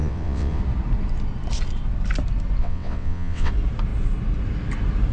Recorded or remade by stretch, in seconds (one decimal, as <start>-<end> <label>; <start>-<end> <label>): 0.0-0.6 remade; 0.6-2.6 recorded; 2.6-3.5 remade; 3.5-5.1 recorded